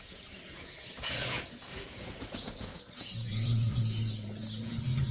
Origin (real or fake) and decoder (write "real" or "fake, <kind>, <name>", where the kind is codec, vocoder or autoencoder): fake, vocoder, Vocos